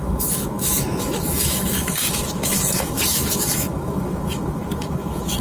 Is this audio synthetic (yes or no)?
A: yes